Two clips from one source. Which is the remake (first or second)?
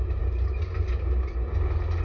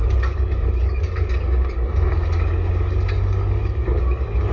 second